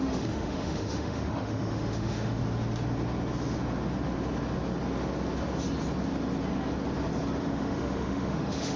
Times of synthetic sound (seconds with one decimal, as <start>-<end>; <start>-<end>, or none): 0.0-2.4; 7.4-8.8